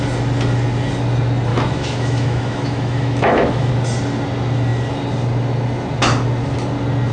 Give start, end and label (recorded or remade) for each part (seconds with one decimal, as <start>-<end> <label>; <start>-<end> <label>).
0.0-1.5 recorded; 1.5-3.7 remade; 3.7-7.1 recorded